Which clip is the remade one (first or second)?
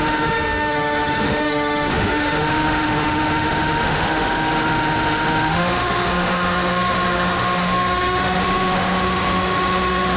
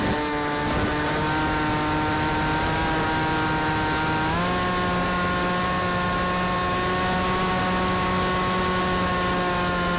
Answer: first